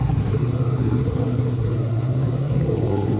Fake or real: fake